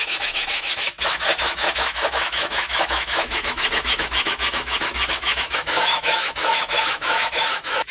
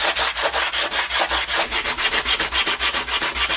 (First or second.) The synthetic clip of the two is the first